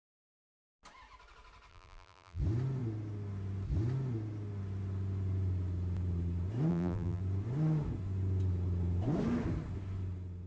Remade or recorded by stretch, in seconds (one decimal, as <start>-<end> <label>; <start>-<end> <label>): 0.0-1.7 recorded; 1.7-2.4 remade; 2.4-6.7 recorded; 6.7-7.2 remade; 7.2-10.5 recorded